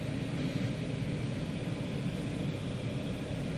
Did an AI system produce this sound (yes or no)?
no